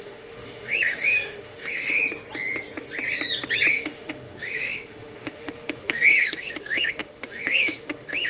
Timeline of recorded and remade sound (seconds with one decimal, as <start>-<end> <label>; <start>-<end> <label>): 0.0-2.0 remade; 2.0-3.7 recorded; 3.7-8.3 remade